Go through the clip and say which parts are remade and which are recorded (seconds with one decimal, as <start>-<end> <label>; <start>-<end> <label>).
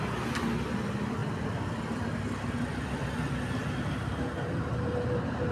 0.0-5.5 recorded